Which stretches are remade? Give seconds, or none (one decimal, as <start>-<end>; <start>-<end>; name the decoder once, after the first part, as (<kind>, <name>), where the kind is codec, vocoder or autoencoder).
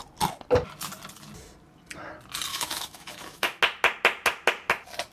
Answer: 2.5-3.6 (autoencoder, DAC-VAE)